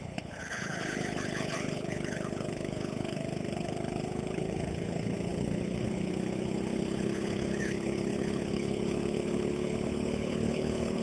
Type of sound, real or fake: fake